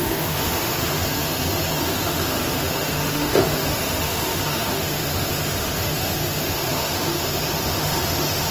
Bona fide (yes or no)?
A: no